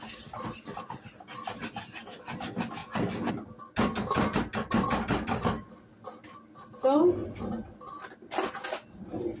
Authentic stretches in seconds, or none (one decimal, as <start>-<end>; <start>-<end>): 0.0-4.5; 5.8-9.4